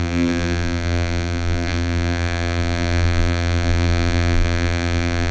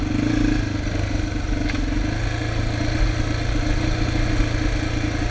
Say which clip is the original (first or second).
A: second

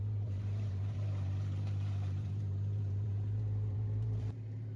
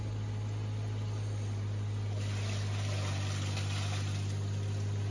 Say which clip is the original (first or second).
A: second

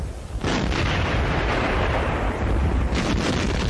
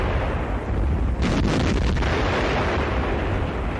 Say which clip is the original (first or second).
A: second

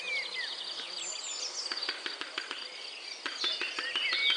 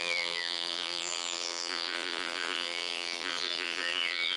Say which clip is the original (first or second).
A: first